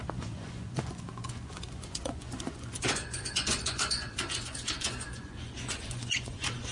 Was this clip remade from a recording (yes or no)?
yes